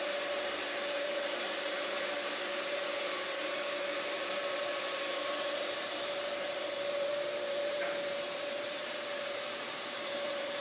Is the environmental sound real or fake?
fake